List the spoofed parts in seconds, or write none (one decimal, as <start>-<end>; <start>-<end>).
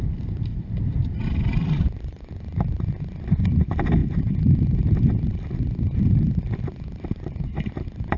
0.0-1.0; 3.1-4.0; 6.6-8.2